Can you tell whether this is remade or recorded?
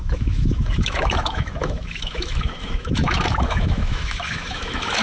remade